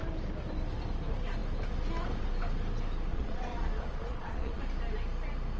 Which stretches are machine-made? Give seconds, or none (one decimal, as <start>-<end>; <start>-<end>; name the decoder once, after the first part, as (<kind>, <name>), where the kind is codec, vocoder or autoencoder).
3.1-4.6 (vocoder, Vocos)